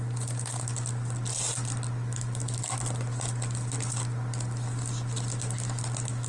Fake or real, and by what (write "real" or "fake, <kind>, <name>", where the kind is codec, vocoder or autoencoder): real